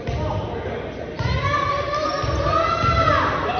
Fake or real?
real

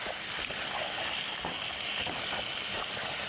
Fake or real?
real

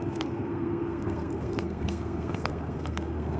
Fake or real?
fake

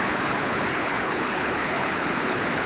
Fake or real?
fake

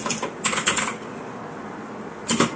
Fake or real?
real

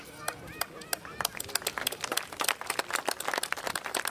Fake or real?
real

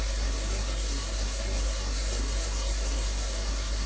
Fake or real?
fake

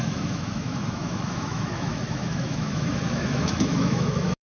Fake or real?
fake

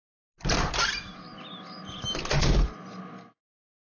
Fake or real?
real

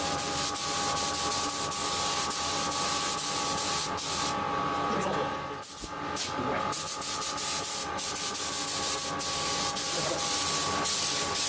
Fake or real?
real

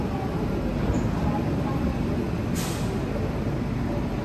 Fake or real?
real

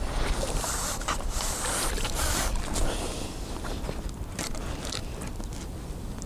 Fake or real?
real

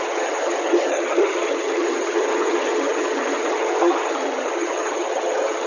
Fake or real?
fake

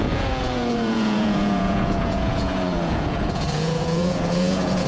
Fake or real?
fake